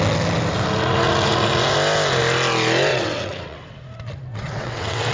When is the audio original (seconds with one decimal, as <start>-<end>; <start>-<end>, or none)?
0.0-2.9; 3.8-4.3